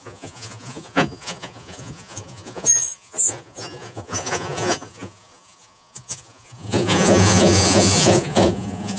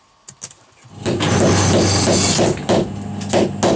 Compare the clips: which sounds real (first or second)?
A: second